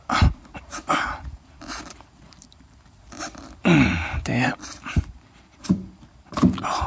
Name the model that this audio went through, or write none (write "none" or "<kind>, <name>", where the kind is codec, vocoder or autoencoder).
vocoder, BigVGAN v2